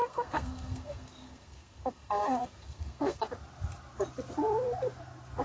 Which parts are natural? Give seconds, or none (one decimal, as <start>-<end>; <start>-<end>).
3.2-5.4